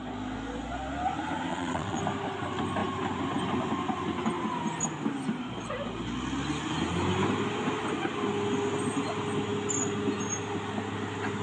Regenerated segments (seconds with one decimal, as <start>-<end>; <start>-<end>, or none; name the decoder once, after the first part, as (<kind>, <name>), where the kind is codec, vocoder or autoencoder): 1.5-2.0 (vocoder, WaveNeXt)